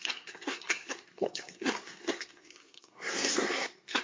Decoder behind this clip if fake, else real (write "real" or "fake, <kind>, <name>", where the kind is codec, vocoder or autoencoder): fake, codec, SNAC